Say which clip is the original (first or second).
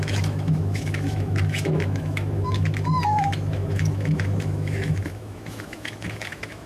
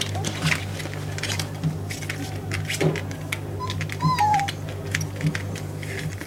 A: second